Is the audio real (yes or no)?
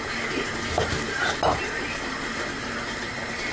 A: no